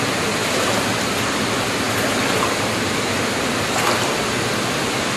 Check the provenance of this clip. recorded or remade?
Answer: recorded